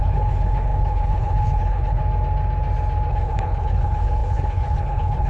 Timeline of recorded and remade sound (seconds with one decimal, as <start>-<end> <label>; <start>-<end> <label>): 0.0-2.0 remade; 2.0-3.1 recorded; 3.1-5.3 remade